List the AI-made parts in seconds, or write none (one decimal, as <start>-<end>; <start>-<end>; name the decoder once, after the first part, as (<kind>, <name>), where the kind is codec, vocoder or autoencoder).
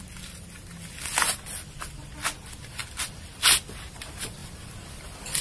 none